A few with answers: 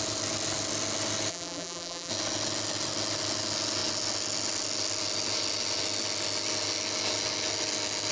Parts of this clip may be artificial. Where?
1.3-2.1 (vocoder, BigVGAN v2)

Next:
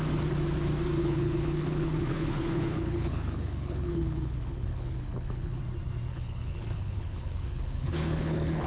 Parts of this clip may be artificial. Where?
1.0-5.6 (codec, HILCodec); 6.1-8.7

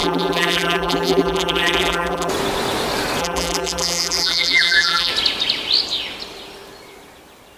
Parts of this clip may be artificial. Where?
0.0-2.3 (vocoder, BigVGAN v2); 3.2-5.1

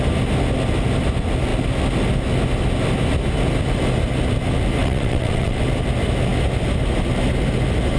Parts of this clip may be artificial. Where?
4.8-5.6 (vocoder, WaveNeXt)

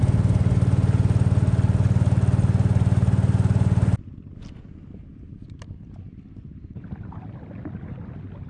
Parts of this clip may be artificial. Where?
none